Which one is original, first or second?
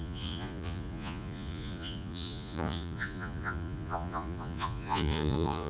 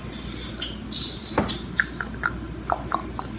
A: second